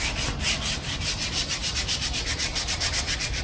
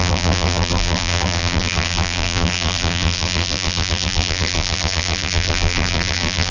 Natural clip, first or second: first